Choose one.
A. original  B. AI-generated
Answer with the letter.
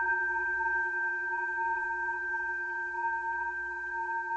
B